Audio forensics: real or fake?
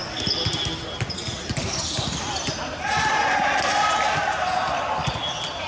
real